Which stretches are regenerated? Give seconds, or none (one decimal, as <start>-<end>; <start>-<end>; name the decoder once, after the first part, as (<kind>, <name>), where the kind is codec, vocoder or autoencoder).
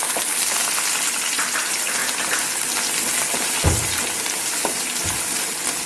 none